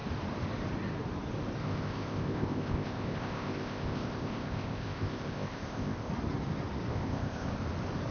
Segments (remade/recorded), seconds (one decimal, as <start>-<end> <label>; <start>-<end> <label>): 0.0-1.6 recorded; 1.6-6.1 remade; 6.1-6.9 recorded; 6.9-7.5 remade; 7.5-8.1 recorded